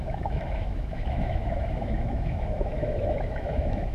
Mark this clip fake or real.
fake